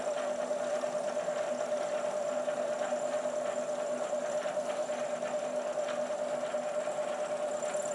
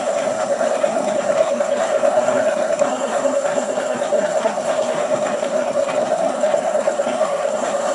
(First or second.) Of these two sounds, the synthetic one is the second